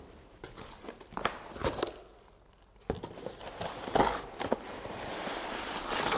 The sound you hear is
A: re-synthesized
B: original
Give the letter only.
B